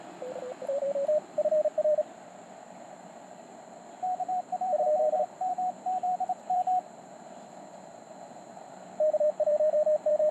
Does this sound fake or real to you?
fake